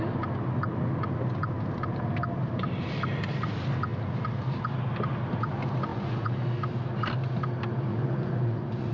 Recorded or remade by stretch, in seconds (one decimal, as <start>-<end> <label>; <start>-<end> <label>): 0.0-5.9 recorded; 5.9-6.4 remade; 6.4-7.9 recorded; 7.9-8.9 remade